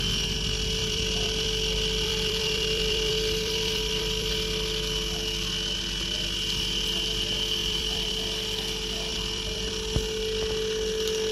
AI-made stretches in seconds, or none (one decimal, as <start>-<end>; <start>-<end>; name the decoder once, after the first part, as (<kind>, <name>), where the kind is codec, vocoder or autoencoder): 0.8-4.3 (vocoder, BigVGAN v2); 7.6-8.2; 9.1-9.7